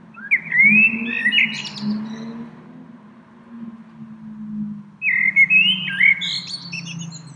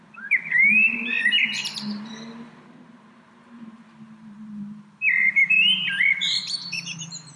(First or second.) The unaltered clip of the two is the first